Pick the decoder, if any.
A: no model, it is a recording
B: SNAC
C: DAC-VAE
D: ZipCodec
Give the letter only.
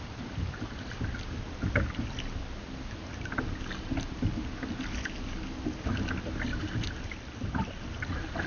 A